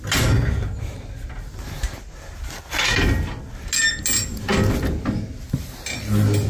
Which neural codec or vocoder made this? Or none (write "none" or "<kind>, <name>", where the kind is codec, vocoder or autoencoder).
none